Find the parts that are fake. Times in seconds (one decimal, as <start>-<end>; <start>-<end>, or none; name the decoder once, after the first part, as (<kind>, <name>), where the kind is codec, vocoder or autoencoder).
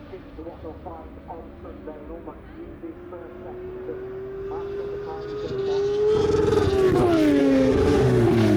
7.4-8.6 (autoencoder, DAC-VAE)